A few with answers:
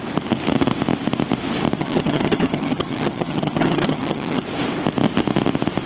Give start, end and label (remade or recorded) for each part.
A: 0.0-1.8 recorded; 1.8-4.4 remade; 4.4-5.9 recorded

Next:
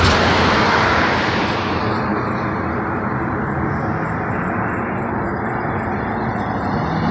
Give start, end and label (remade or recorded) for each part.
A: 0.0-7.1 recorded

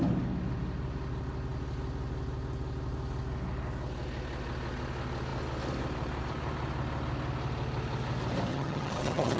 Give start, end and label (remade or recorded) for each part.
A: 0.0-8.5 recorded; 8.5-9.4 remade

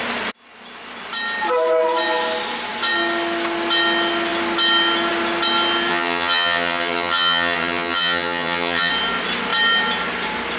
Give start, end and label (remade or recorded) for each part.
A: 0.0-5.9 recorded; 5.9-8.9 remade; 8.9-10.6 recorded

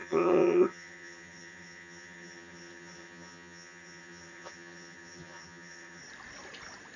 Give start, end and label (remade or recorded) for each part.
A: 0.0-6.0 remade; 6.0-7.0 recorded

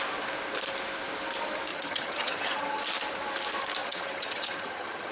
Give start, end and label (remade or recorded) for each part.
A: 0.0-1.7 recorded; 1.7-2.8 remade; 2.8-3.8 recorded; 3.8-5.1 remade